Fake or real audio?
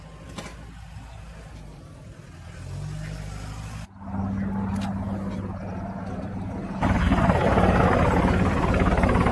real